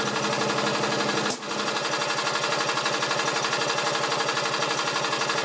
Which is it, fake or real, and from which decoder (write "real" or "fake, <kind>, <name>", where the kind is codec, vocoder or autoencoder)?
real